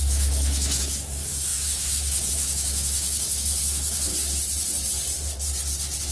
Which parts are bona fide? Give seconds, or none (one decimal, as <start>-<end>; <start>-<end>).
4.1-6.1